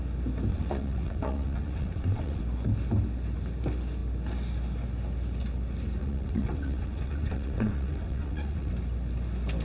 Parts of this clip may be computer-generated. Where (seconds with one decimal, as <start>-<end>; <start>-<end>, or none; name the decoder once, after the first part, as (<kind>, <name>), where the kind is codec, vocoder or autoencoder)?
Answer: 0.5-2.4 (vocoder, WaveNeXt); 6.0-8.7